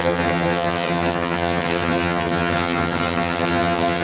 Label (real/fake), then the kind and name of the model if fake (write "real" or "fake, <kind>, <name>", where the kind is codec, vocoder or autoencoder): fake, vocoder, HiFi-GAN